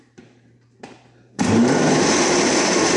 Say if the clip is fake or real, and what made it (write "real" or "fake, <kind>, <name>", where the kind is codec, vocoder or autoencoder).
fake, vocoder, BigVGAN v2